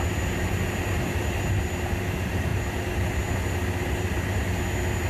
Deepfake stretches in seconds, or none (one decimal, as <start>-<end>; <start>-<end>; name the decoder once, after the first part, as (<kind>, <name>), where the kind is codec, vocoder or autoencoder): none